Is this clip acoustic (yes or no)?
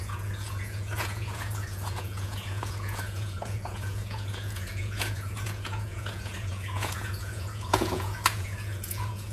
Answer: no